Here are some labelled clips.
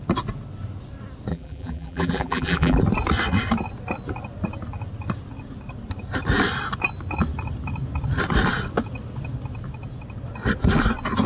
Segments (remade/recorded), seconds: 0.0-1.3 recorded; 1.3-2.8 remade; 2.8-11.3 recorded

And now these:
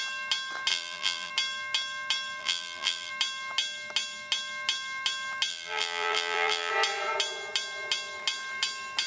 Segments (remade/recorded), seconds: 0.0-0.7 recorded; 0.7-1.3 remade; 1.3-2.4 recorded; 2.4-3.1 remade; 3.1-5.5 recorded; 5.5-6.7 remade; 6.7-9.1 recorded